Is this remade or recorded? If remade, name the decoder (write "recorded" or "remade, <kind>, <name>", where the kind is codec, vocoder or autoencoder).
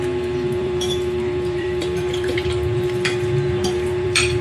remade, vocoder, BigVGAN v2